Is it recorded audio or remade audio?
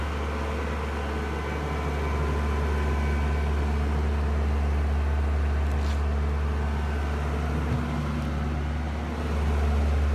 recorded